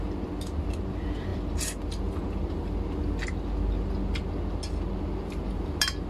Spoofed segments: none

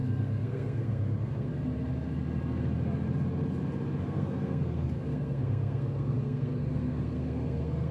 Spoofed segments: 0.0-1.5 (codec, SNAC); 4.0-7.9

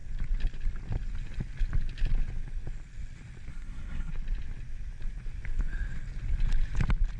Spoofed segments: 3.5-4.1 (codec, SNAC)

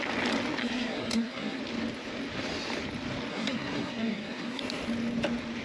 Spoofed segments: 0.6-1.6 (codec, SNAC); 3.3-4.6